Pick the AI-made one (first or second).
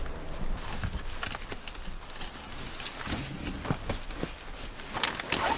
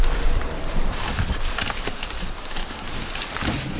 second